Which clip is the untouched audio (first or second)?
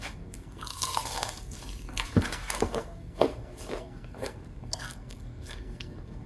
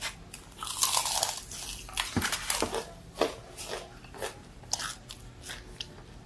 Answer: second